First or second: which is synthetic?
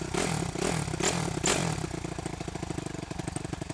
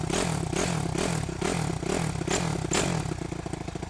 first